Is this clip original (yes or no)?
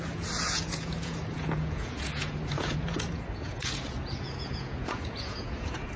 no